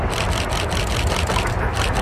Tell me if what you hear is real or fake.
real